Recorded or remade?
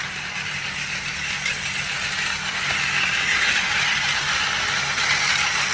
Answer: recorded